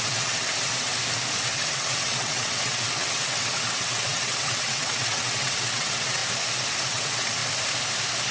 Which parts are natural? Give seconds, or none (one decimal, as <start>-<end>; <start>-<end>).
0.9-1.4; 6.2-6.9; 7.4-8.3